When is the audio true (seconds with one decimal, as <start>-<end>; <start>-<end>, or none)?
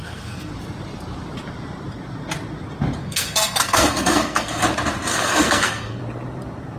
0.5-3.0; 4.6-5.1; 6.0-6.8